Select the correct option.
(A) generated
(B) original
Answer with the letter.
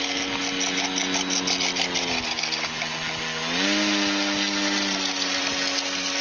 B